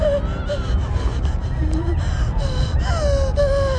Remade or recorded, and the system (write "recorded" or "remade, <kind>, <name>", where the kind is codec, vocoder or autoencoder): recorded